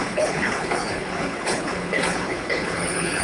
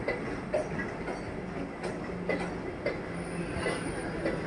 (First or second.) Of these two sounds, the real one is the second